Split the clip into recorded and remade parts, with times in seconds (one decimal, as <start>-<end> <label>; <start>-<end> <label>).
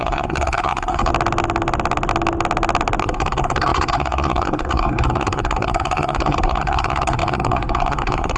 0.0-1.1 remade; 1.1-3.0 recorded; 3.0-8.4 remade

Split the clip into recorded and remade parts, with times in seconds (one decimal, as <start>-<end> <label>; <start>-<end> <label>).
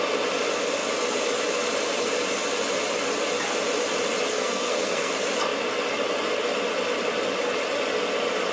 0.0-4.3 recorded; 4.3-5.1 remade; 5.1-8.5 recorded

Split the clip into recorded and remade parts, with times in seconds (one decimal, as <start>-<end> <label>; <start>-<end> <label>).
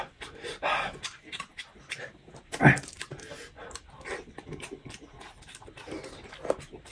0.0-6.9 recorded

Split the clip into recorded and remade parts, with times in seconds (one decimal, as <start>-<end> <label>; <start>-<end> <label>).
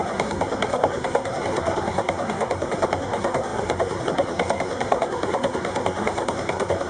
0.0-6.9 remade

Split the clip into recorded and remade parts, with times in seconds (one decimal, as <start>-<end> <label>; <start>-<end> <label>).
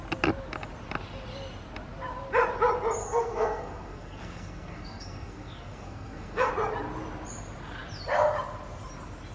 0.0-3.0 recorded; 3.0-6.5 remade; 6.5-9.3 recorded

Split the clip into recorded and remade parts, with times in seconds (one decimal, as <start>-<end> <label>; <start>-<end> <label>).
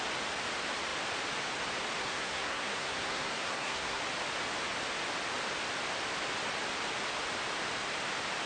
0.0-2.0 recorded; 2.0-4.0 remade; 4.0-8.5 recorded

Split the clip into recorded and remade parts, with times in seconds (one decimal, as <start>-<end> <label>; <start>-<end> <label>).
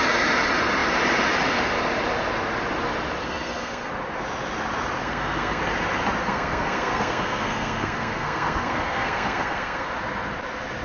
0.0-3.2 recorded; 3.2-3.9 remade; 3.9-5.0 recorded; 5.0-5.6 remade; 5.6-6.2 recorded; 6.2-9.9 remade; 9.9-10.8 recorded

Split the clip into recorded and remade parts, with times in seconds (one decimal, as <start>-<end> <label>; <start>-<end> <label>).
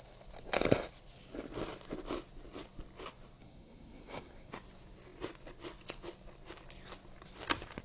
0.0-3.4 recorded; 3.4-4.5 remade; 4.5-7.8 recorded